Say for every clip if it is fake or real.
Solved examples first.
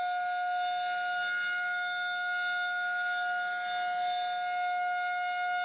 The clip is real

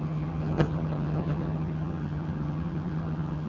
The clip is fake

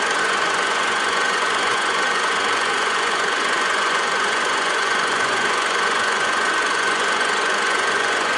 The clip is fake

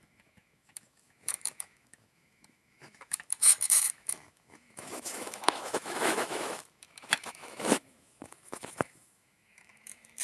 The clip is fake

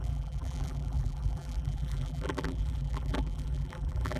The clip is fake